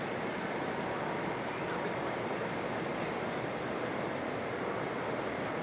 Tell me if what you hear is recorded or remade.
recorded